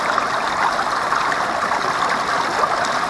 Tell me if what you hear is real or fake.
real